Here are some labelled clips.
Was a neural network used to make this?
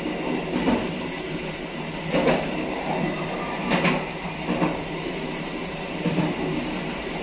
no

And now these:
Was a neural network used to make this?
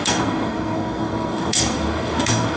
yes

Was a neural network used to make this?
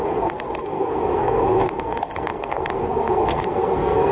yes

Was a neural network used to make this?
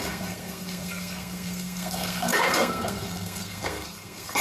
yes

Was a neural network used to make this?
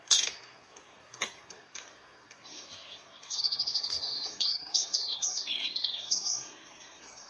yes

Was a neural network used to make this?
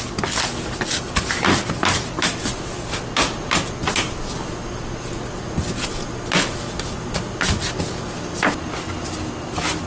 no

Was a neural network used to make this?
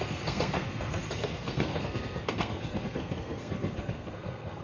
yes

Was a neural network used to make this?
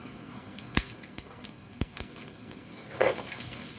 yes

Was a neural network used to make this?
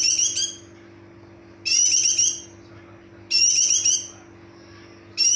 no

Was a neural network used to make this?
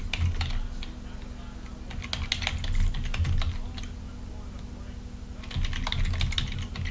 no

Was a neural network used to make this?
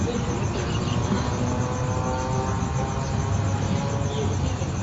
no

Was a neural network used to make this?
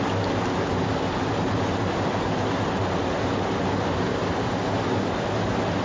no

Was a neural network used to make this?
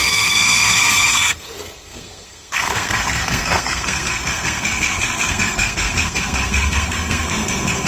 yes